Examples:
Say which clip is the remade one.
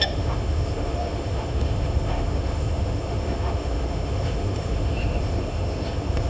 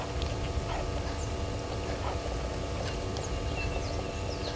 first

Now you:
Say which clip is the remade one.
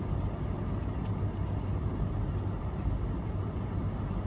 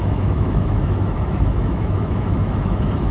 second